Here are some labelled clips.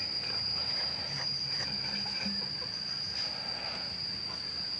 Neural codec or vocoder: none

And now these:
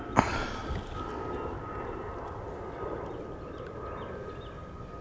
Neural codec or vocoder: none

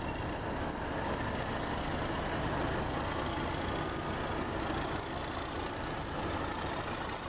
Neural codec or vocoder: none